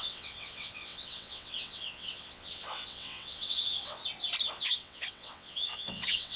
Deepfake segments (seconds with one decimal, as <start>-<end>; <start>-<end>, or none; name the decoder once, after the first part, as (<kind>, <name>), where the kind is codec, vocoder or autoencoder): 0.0-4.0 (vocoder, WaveNeXt); 4.5-6.4

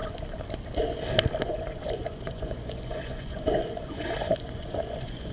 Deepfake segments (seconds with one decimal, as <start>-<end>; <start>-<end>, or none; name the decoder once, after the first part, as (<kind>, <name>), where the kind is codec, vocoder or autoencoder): 1.4-5.3 (vocoder, Vocos)